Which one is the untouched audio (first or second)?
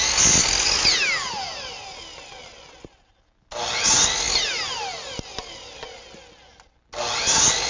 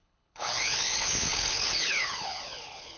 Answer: first